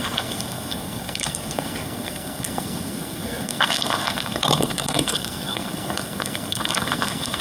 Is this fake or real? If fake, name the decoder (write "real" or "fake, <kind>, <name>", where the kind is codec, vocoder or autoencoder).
fake, codec, SNAC